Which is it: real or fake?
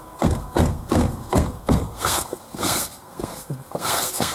fake